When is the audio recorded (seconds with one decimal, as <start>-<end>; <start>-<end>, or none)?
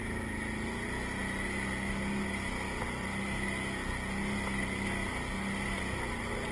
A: 0.0-6.5